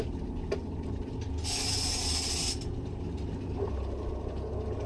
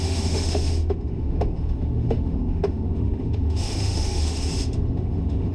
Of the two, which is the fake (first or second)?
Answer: second